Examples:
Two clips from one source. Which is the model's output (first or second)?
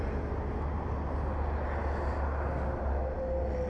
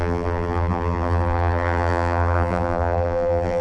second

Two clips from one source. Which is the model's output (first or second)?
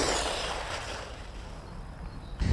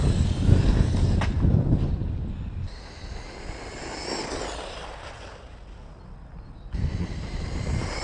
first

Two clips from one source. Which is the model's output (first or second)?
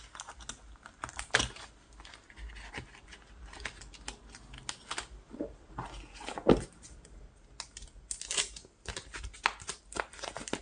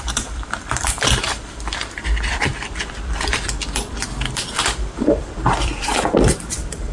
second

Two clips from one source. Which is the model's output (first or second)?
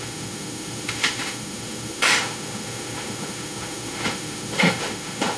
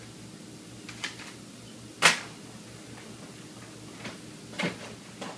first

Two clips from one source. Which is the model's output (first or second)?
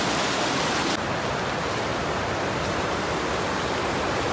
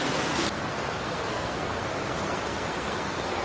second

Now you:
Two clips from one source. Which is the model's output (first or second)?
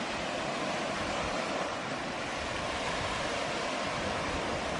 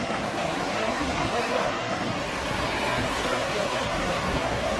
second